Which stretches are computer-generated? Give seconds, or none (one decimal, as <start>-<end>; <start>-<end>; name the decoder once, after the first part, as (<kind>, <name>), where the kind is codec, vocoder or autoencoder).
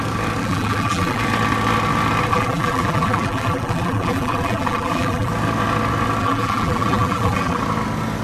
0.4-1.2 (vocoder, BigVGAN v2); 2.3-5.3; 6.2-7.6